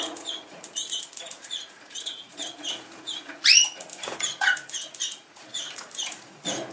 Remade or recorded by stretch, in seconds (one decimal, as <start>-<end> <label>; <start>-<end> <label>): 0.0-6.7 remade